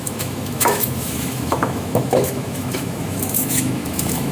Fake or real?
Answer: fake